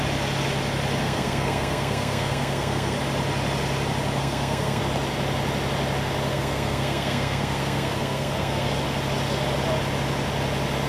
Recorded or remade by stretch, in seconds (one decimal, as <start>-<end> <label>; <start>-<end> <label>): 0.0-1.0 recorded; 1.0-3.0 remade; 3.0-4.2 recorded; 4.2-4.8 remade; 4.8-6.3 recorded; 6.3-8.7 remade; 8.7-10.9 recorded